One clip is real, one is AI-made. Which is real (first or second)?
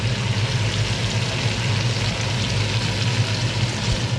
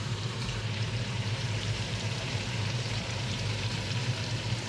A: first